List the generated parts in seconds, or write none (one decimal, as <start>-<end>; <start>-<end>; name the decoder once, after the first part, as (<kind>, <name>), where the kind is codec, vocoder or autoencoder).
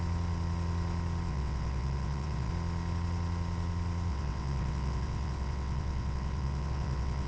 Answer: 1.3-2.5 (vocoder, WaveNeXt); 4.1-7.3